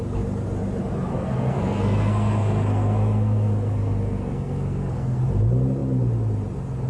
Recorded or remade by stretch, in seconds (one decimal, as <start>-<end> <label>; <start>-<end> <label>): 0.0-1.1 recorded; 1.1-5.2 remade; 5.2-6.9 recorded